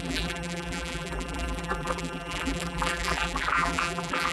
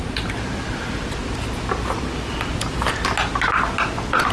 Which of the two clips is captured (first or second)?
second